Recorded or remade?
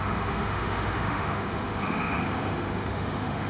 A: remade